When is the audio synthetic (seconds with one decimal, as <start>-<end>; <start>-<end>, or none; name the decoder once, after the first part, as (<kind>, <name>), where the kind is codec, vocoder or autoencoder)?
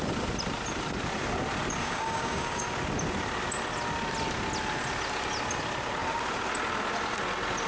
1.8-2.6 (codec, DAC)